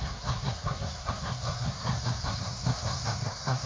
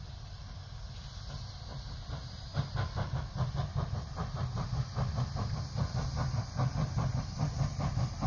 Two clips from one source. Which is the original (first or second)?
second